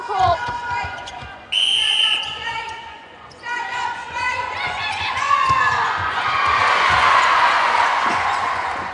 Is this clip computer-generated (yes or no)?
yes